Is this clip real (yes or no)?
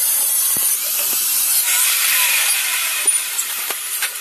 no